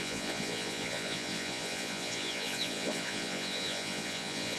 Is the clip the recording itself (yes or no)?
no